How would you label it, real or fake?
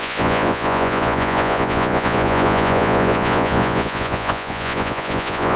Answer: fake